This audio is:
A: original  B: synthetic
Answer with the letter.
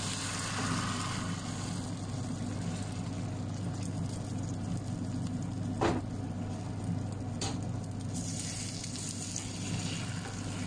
A